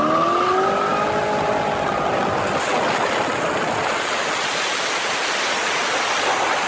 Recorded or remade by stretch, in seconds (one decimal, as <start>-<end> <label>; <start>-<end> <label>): 0.0-6.7 recorded